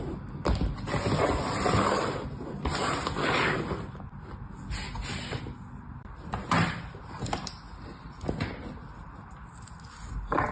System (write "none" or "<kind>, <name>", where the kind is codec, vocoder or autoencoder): none